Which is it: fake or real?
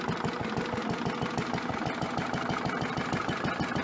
real